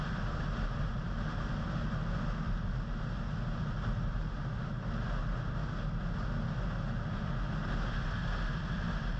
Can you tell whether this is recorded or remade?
recorded